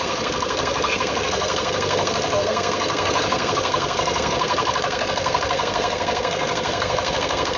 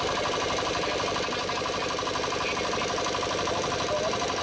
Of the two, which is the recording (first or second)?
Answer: second